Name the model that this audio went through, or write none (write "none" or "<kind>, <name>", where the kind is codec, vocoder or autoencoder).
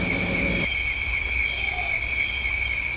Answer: none